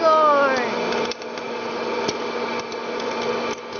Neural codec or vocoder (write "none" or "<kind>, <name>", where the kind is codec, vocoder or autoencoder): none